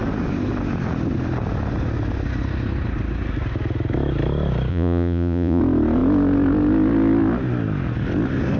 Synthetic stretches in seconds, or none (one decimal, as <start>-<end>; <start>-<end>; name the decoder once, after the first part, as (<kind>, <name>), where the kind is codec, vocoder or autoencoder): 4.7-5.6 (vocoder, Vocos)

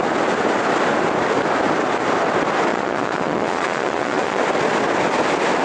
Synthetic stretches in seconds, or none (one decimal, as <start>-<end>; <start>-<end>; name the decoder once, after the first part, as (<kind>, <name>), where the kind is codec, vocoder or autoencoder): 2.7-4.4 (vocoder, Vocos)

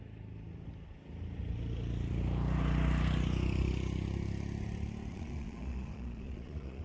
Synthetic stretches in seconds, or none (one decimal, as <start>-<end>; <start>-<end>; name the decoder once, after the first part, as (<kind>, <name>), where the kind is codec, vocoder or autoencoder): 5.1-6.8 (vocoder, Vocos)